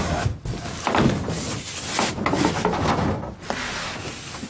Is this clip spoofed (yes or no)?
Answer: no